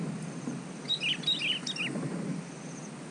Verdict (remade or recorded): recorded